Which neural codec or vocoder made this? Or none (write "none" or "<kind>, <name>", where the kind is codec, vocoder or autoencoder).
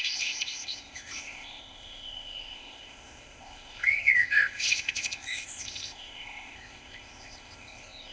codec, ZipCodec